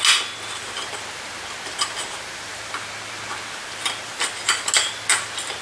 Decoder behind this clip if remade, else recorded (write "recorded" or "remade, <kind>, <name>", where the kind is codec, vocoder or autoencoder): recorded